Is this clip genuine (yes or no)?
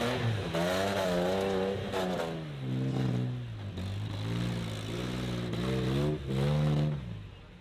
yes